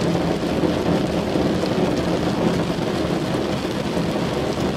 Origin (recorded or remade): recorded